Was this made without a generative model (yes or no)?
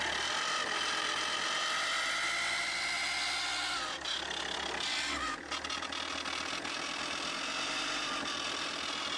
yes